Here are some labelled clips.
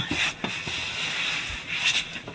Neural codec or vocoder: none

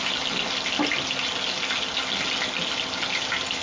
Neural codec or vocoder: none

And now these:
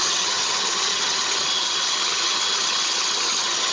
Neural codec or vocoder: vocoder, HiFi-GAN